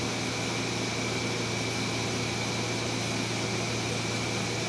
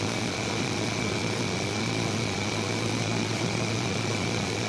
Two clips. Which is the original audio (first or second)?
first